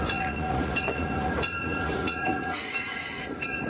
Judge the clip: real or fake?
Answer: fake